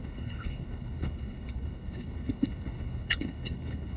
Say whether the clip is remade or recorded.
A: remade